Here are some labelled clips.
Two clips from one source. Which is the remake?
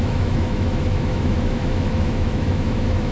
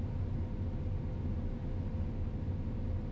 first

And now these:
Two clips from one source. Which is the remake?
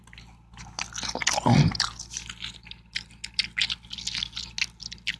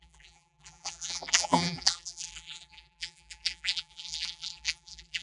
second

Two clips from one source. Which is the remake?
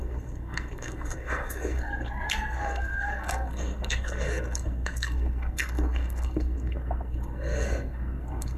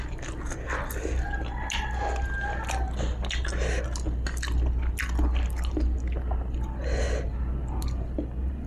first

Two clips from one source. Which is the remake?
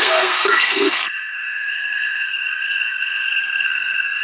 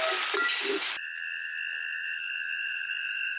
first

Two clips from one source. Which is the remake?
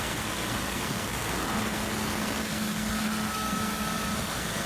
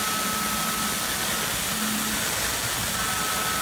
first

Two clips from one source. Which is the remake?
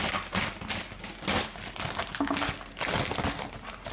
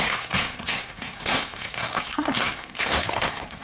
second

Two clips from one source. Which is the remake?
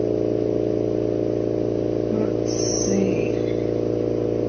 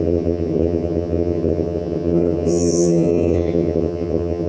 second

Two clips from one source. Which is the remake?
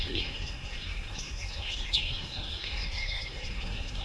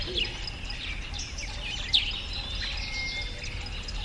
first